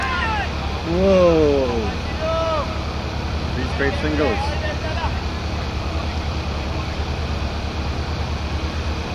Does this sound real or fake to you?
real